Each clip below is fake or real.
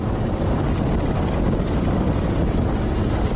real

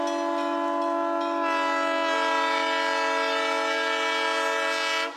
real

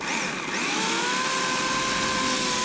real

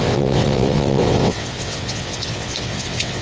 fake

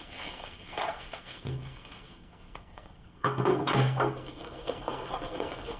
fake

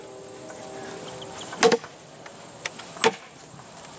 real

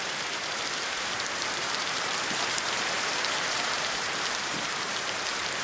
fake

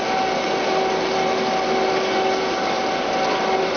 real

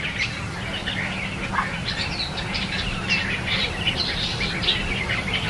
real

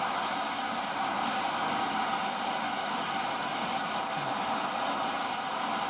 real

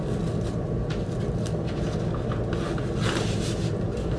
real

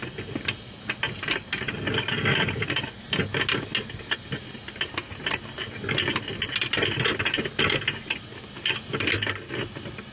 real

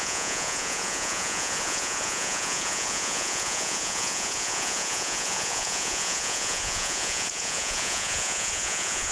fake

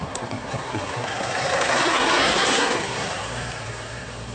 fake